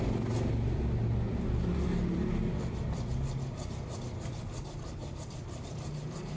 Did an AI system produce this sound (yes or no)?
no